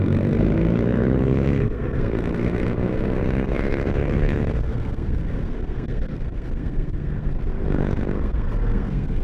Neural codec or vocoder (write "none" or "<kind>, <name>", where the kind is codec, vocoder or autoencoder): codec, SNAC